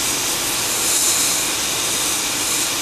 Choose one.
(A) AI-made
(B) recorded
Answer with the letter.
B